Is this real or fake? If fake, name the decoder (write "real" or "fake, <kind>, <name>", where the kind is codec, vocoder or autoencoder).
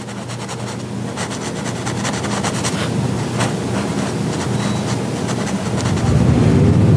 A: real